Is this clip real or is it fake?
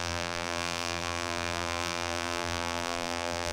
fake